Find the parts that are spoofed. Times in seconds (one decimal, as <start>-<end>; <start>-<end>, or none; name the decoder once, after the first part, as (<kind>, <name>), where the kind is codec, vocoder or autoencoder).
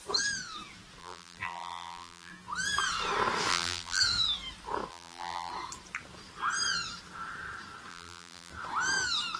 1.0-2.3 (vocoder, BigVGAN v2); 3.5-4.0; 4.9-5.5; 7.9-8.5